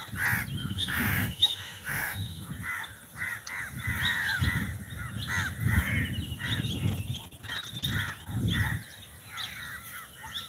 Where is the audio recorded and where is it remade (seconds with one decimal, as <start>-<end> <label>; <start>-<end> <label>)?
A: 0.0-0.6 recorded; 0.6-2.5 remade; 2.5-10.5 recorded